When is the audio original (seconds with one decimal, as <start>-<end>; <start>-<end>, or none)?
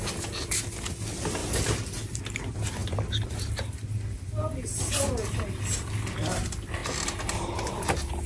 0.0-8.3